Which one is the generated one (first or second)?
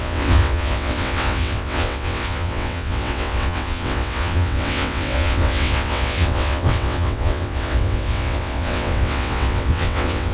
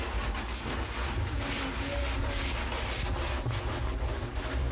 first